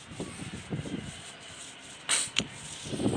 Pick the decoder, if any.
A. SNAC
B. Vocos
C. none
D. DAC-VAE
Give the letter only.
C